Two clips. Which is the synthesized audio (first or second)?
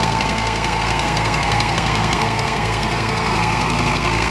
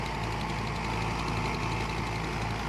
first